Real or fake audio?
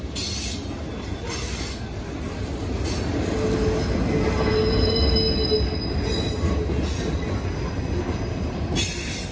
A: real